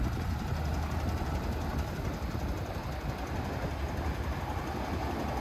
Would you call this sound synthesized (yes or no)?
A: no